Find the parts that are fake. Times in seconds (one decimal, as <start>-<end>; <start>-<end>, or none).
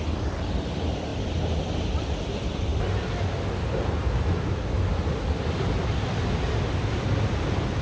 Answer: none